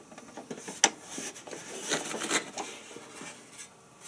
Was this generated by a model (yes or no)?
no